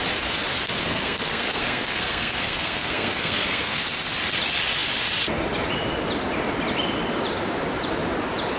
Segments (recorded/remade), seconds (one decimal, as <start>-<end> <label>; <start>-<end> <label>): 0.0-0.8 recorded; 0.8-3.8 remade; 3.8-8.6 recorded